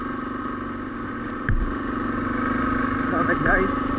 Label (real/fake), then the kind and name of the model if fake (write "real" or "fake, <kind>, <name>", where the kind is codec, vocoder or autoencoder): real